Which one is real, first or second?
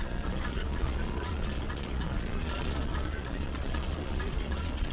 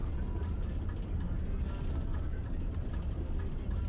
second